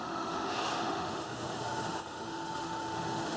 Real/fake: fake